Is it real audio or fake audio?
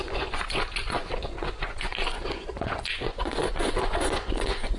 fake